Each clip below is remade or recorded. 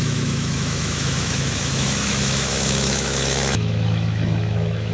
remade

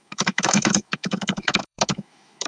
remade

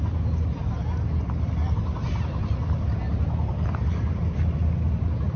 recorded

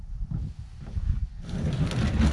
recorded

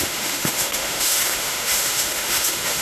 remade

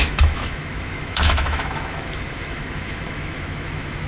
remade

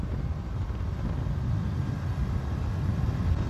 recorded